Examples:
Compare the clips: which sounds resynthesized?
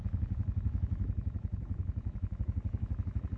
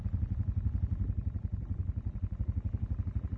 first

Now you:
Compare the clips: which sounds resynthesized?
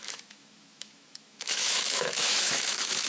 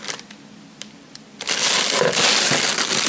first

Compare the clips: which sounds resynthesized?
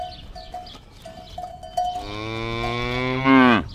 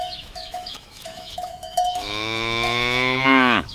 second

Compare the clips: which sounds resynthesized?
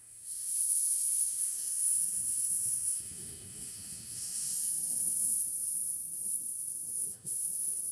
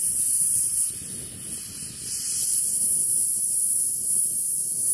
first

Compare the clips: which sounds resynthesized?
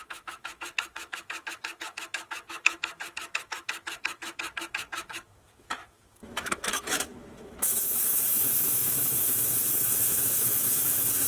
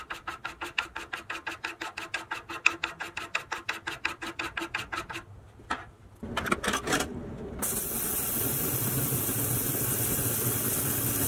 first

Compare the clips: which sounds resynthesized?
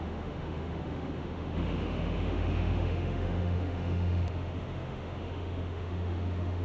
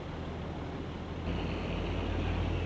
first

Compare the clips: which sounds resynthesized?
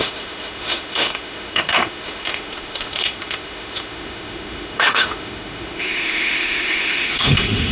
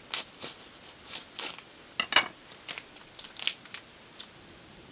first